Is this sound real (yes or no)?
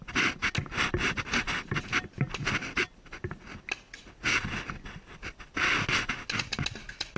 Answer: yes